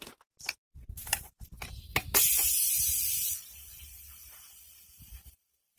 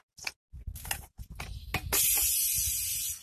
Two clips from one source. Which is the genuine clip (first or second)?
second